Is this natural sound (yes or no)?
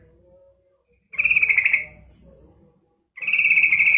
yes